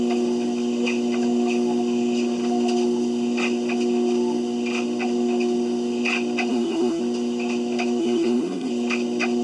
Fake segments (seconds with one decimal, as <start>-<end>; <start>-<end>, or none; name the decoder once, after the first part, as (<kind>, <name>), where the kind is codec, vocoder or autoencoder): 6.5-7.0 (codec, SNAC); 8.0-8.7